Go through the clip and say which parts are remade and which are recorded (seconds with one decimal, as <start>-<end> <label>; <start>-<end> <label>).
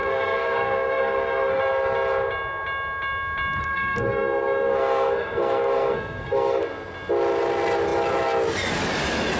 0.0-1.6 remade; 1.6-3.6 recorded; 3.6-6.6 remade; 6.6-9.4 recorded